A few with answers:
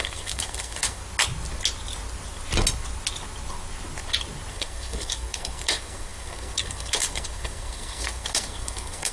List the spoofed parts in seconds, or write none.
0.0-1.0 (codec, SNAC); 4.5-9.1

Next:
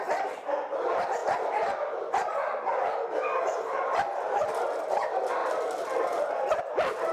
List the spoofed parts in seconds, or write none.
none

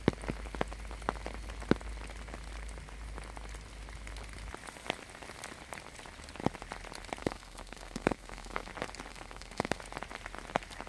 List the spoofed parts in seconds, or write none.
7.2-8.7 (codec, SNAC); 9.1-9.8

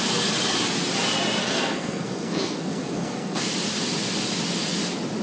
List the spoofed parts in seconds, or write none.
1.4-3.5 (codec, SNAC)

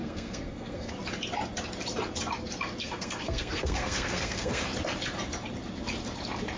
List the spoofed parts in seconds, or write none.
0.0-0.9 (codec, SNAC); 2.8-4.6

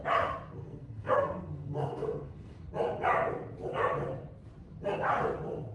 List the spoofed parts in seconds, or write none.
0.6-2.7 (codec, SNAC)